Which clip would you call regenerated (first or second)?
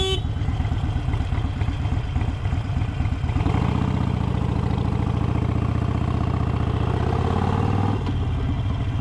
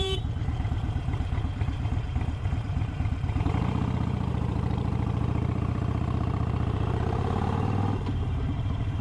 second